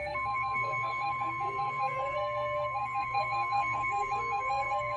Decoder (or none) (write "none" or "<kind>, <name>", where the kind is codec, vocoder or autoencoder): codec, SNAC